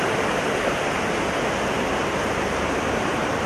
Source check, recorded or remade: recorded